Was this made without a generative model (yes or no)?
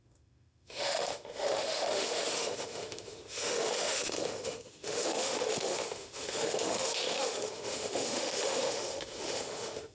no